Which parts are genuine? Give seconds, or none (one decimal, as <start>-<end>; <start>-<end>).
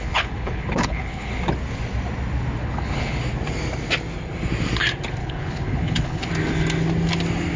1.3-2.6; 3.2-5.2; 6.3-7.6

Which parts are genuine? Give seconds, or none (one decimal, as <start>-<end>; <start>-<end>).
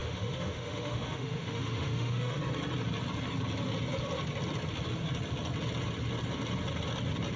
2.4-7.4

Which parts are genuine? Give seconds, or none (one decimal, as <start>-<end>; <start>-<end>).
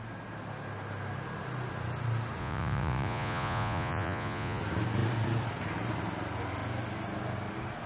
0.0-2.4; 4.6-7.9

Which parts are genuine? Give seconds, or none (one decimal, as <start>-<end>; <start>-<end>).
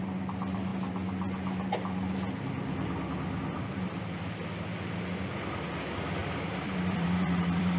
0.0-6.2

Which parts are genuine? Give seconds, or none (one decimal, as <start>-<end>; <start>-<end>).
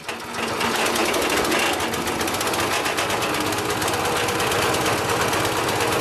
0.0-6.0